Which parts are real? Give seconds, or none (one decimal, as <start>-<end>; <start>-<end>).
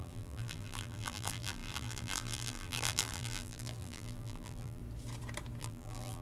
4.8-5.6